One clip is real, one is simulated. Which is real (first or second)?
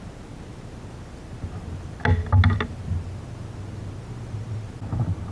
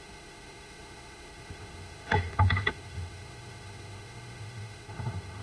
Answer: first